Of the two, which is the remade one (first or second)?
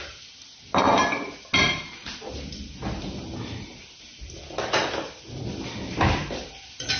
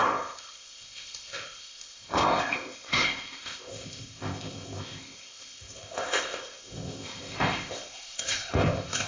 second